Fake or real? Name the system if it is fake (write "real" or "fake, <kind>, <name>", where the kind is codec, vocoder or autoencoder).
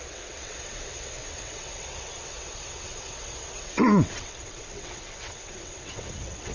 fake, vocoder, WaveNeXt